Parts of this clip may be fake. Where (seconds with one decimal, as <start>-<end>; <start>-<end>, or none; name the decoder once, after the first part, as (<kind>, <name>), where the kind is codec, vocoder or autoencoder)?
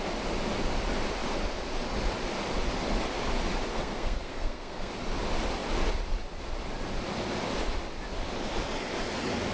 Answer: 3.7-4.9 (codec, SNAC)